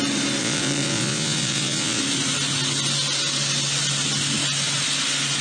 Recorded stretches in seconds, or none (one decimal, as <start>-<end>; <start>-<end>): 0.0-0.4; 2.0-5.4